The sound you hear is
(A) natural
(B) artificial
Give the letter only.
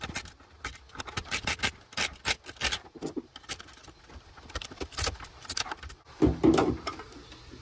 A